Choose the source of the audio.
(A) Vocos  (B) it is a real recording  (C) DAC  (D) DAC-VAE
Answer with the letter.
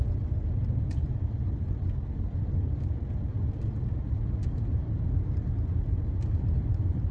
B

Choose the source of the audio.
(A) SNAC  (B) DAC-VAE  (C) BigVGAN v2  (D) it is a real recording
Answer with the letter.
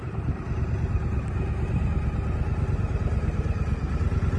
D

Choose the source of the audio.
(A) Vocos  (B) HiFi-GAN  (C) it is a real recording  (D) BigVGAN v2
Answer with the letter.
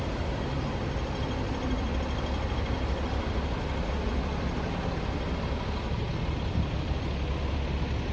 C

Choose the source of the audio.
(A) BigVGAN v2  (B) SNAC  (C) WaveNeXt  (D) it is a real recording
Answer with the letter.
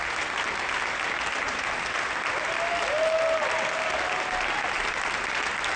D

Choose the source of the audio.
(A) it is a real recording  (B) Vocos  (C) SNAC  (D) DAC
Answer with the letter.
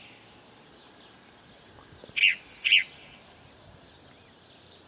A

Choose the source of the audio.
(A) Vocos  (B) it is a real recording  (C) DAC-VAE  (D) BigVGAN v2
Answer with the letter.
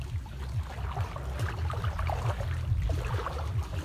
B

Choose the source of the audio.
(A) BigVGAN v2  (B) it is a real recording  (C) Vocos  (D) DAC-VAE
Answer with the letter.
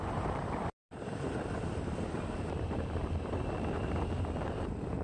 A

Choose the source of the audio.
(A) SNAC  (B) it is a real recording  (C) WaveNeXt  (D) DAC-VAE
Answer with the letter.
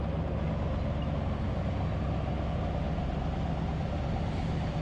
B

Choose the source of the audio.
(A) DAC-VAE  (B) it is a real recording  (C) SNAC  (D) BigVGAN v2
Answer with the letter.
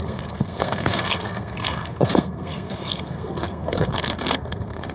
C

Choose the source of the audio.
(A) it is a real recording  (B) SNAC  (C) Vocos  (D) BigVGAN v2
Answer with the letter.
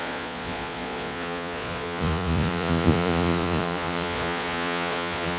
C